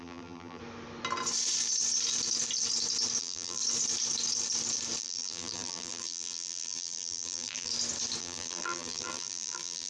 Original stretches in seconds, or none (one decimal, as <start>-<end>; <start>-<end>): 0.6-3.2; 3.6-5.0; 7.7-8.2